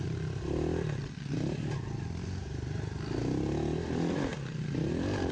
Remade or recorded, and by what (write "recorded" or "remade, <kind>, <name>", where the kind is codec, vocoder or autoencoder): recorded